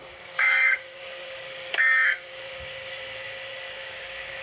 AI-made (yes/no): yes